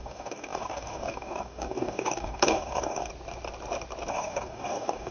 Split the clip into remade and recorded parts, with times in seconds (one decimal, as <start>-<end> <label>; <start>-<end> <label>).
0.0-3.1 remade; 3.1-4.1 recorded; 4.1-5.1 remade